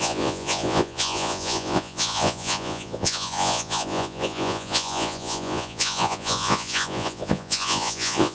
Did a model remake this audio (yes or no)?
yes